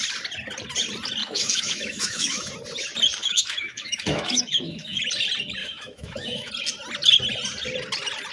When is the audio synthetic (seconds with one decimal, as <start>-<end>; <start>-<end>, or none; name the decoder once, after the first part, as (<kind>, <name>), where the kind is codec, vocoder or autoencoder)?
1.2-2.5 (autoencoder, DAC-VAE); 3.2-5.0; 5.6-6.5